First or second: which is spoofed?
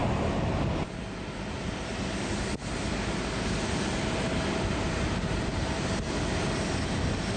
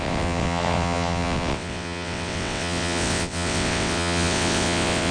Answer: second